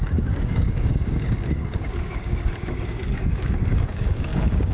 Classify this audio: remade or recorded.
remade